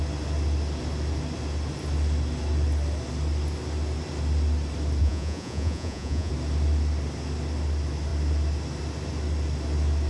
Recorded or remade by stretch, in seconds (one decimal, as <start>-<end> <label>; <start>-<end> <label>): 0.0-5.0 recorded; 5.0-6.3 remade; 6.3-10.1 recorded